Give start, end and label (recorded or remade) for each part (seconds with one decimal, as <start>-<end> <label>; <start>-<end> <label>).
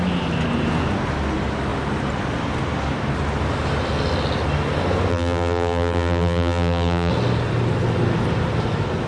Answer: 0.0-5.1 recorded; 5.1-7.1 remade; 7.1-9.1 recorded